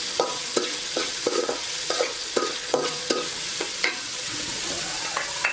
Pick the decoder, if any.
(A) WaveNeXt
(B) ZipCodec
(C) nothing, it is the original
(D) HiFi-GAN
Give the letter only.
A